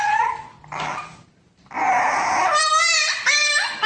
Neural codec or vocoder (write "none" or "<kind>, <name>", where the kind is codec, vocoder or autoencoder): none